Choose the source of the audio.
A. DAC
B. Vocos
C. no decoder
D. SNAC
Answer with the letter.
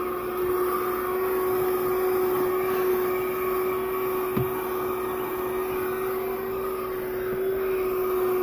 C